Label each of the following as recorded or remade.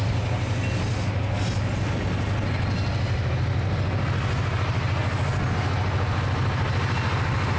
recorded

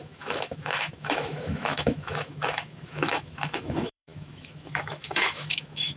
remade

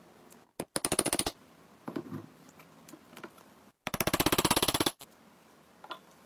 recorded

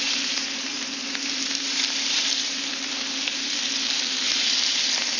remade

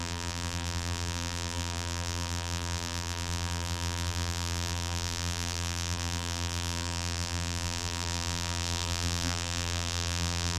remade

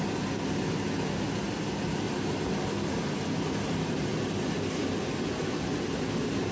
recorded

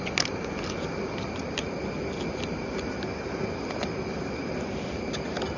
recorded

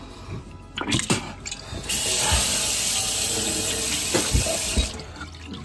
recorded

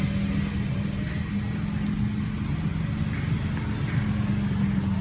recorded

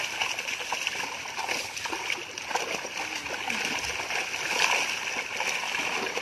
recorded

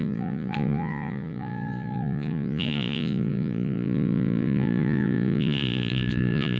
remade